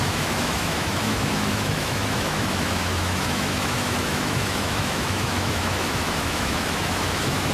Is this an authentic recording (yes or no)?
no